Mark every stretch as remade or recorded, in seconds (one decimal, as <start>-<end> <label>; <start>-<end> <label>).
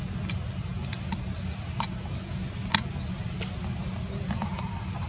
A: 0.0-5.1 recorded